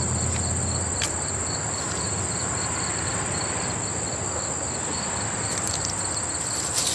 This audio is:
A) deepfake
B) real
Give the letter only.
B